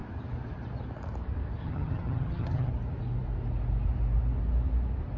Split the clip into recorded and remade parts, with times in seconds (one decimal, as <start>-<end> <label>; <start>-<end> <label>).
0.0-1.6 recorded; 1.6-2.7 remade; 2.7-5.2 recorded